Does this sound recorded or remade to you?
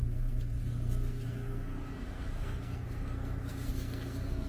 remade